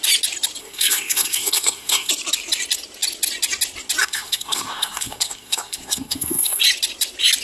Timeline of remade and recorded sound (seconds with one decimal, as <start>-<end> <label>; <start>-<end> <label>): 0.0-0.6 recorded; 0.6-2.1 remade; 2.1-4.0 recorded; 4.0-6.6 remade; 6.6-7.4 recorded